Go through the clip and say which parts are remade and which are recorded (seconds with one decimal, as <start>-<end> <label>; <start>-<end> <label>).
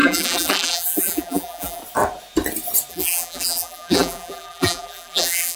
0.0-1.8 remade; 1.8-2.9 recorded; 2.9-5.6 remade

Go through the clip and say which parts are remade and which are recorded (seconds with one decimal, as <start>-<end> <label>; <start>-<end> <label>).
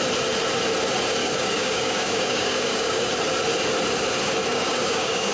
0.0-1.2 recorded; 1.2-3.1 remade; 3.1-4.5 recorded; 4.5-5.3 remade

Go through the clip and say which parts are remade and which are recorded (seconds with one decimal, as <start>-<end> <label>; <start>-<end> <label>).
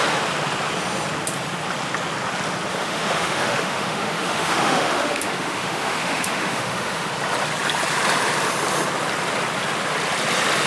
0.0-2.7 recorded; 2.7-7.1 remade; 7.1-10.7 recorded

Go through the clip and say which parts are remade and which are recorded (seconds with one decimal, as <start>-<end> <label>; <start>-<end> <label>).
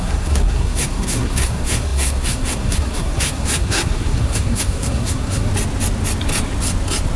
0.0-5.5 remade; 5.5-7.2 recorded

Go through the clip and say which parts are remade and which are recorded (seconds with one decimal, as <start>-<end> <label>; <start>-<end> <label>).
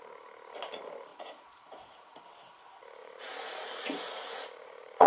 0.0-1.1 recorded; 1.1-2.2 remade; 2.2-3.0 recorded; 3.0-5.1 remade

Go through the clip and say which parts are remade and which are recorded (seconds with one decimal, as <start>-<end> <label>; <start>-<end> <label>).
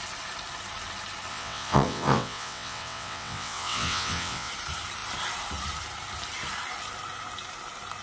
0.0-1.3 recorded; 1.3-4.5 remade; 4.5-8.0 recorded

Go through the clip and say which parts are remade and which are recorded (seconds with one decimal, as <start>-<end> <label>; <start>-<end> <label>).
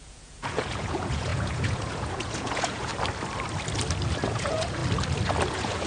0.0-2.9 remade; 2.9-4.3 recorded; 4.3-4.8 remade; 4.8-5.5 recorded; 5.5-5.9 remade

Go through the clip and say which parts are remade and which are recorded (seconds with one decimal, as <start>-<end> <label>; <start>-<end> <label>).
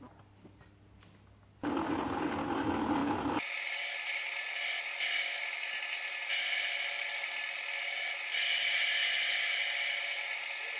0.0-10.8 recorded